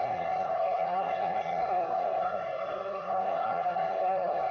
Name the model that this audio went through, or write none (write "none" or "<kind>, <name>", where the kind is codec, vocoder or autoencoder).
codec, SNAC